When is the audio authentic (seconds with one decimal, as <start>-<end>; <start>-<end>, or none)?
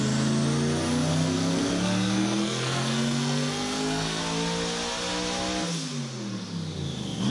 0.0-1.1; 4.2-7.3